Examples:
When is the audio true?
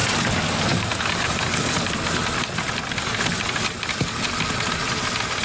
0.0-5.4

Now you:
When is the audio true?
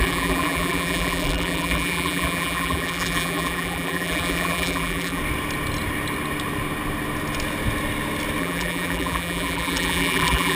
5.2-8.4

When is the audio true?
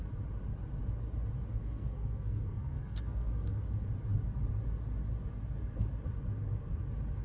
0.0-1.5; 3.6-7.2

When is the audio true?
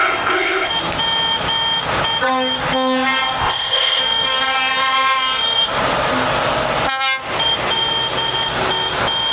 0.7-3.4; 4.0-9.3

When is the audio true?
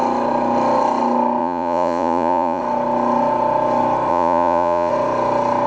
0.0-1.4; 2.6-4.1; 4.9-5.7